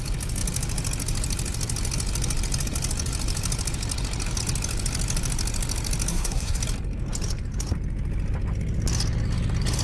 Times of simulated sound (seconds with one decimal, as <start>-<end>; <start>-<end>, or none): 6.1-6.6